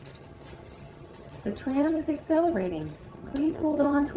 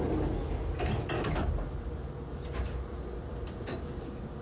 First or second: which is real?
second